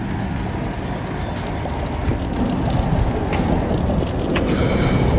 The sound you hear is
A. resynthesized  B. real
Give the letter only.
B